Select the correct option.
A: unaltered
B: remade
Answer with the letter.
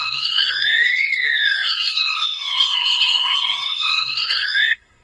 B